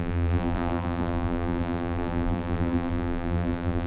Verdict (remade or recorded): remade